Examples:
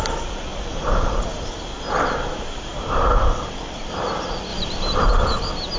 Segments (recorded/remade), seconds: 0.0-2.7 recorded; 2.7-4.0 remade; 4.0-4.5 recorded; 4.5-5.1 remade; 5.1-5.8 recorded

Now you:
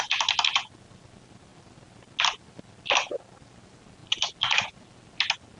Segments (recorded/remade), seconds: 0.0-5.6 recorded

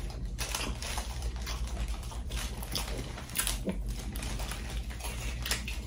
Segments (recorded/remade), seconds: 0.0-0.8 recorded; 0.8-4.3 remade; 4.3-5.9 recorded

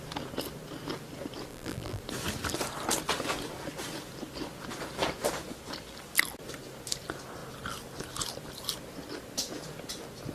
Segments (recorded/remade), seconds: 0.0-1.5 recorded; 1.5-2.0 remade; 2.0-10.3 recorded

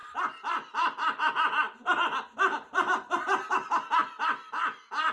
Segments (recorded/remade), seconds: 0.0-3.1 remade; 3.1-4.0 recorded; 4.0-5.1 remade

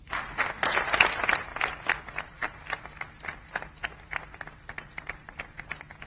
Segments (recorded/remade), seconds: 0.0-1.5 remade; 1.5-2.2 recorded; 2.2-6.1 remade

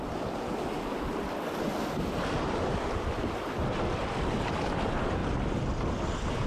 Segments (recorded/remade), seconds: 0.0-5.2 recorded; 5.2-6.5 remade